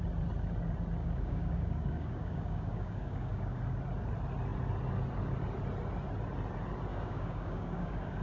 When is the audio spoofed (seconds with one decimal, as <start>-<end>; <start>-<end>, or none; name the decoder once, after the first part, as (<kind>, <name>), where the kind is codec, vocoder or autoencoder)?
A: 1.0-3.6 (codec, DAC); 6.9-8.2